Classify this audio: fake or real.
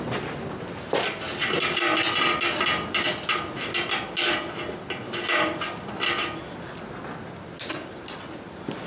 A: real